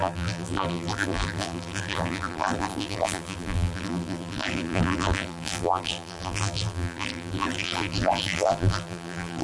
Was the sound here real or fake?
fake